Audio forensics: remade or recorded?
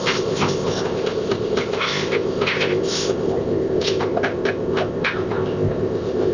remade